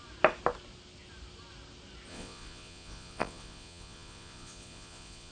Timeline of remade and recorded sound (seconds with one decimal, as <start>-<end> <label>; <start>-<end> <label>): 0.0-2.1 recorded; 2.1-5.3 remade